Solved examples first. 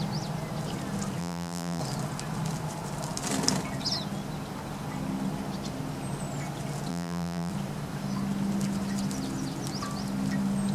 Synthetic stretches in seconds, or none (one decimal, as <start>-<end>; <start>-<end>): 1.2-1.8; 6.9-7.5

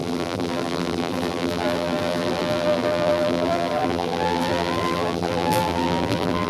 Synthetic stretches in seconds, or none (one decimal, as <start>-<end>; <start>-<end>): 0.0-6.5

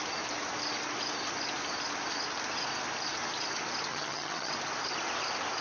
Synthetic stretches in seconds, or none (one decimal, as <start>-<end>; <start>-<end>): 3.9-4.5

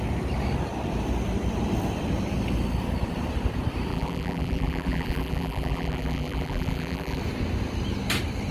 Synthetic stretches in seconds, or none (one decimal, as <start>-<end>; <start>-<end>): 3.9-7.2

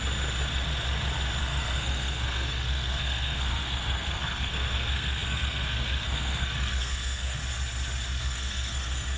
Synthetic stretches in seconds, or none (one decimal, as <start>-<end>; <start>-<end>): 1.4-7.4; 8.2-9.2